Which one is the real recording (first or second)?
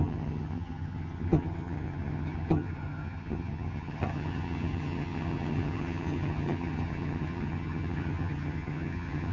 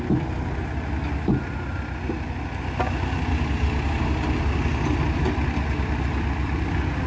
second